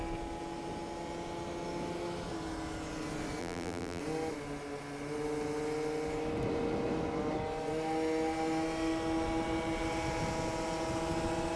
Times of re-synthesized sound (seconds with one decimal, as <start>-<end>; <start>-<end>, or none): 3.4-4.0